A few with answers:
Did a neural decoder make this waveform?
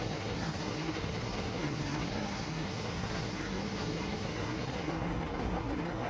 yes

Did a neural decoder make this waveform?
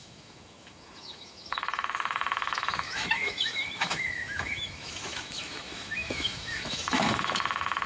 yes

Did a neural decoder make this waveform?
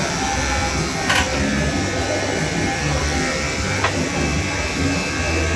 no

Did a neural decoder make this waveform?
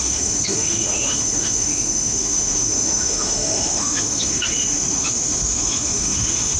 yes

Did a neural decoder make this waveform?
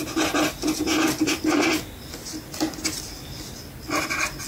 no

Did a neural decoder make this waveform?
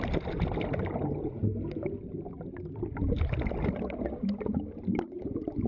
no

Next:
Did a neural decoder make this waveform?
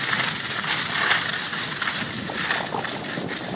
no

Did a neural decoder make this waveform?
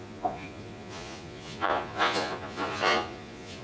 yes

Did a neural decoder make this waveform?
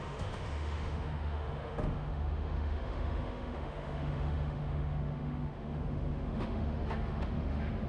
yes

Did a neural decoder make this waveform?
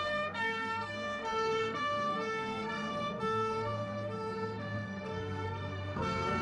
yes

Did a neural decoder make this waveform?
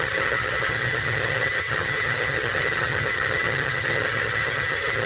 yes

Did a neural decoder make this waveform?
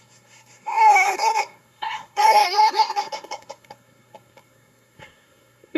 yes